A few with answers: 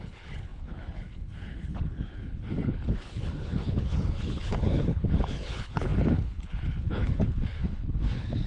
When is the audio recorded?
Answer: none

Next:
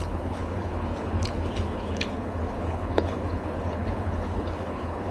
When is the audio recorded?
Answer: none

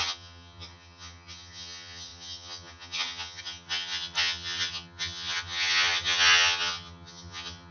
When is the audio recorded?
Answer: none

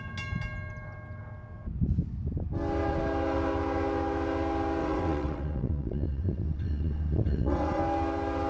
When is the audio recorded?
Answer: 0.0-4.8; 7.8-8.5

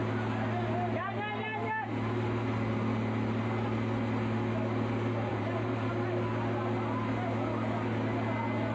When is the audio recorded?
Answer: 0.0-5.3; 5.9-8.7

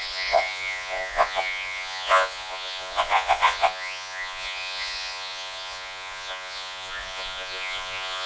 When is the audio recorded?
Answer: none

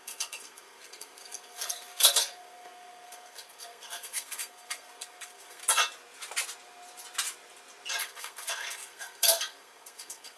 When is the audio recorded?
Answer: 5.6-8.0

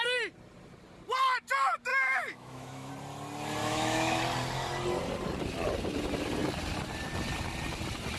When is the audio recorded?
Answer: 0.0-1.9; 2.9-3.6; 4.2-8.2